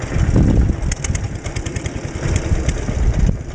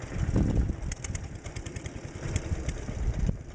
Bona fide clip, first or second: first